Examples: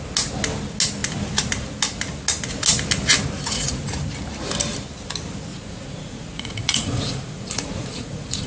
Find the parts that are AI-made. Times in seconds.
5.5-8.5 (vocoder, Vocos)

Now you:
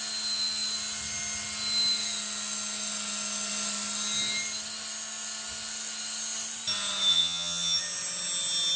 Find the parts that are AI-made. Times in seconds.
7.1-7.8 (vocoder, HiFi-GAN)

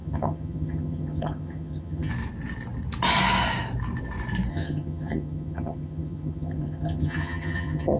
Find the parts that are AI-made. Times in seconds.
0.0-2.1 (vocoder, HiFi-GAN); 4.5-8.0

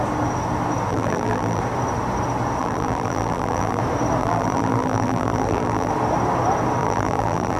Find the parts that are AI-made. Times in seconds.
0.9-1.6 (vocoder, BigVGAN v2); 2.6-3.8; 4.2-5.9; 6.8-7.6

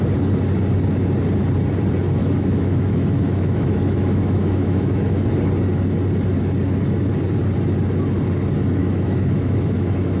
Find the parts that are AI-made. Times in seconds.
2.2-5.3 (autoencoder, DAC-VAE); 8.8-10.2